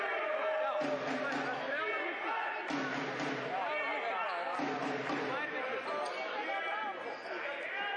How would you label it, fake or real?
real